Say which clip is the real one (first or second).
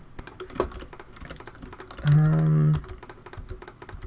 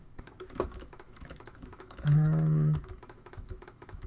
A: first